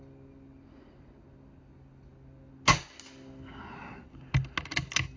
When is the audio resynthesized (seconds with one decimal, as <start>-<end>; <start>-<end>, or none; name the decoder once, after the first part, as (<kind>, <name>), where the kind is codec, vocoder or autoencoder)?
none